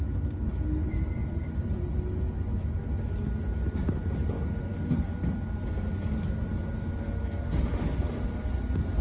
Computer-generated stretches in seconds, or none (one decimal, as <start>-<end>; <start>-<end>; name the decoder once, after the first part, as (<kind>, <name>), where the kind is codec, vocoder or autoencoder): 1.2-1.9 (vocoder, BigVGAN v2)